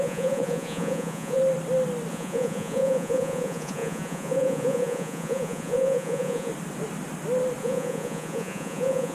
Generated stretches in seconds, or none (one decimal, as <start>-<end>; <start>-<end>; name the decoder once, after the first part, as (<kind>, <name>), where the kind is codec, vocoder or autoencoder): 0.0-1.4 (vocoder, Vocos); 2.1-6.5; 7.6-9.1